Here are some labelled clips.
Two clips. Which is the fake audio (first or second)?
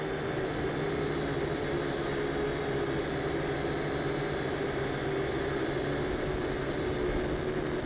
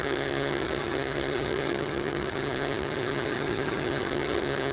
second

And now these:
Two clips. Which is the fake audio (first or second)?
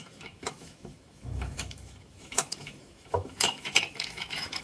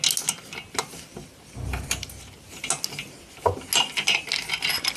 first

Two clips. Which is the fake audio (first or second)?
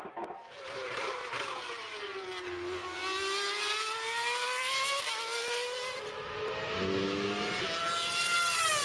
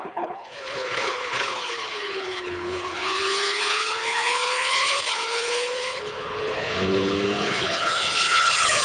second